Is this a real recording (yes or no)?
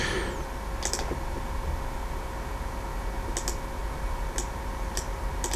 yes